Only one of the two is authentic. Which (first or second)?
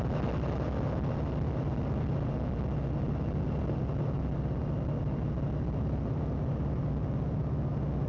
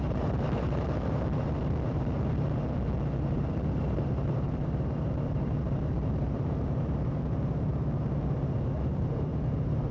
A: first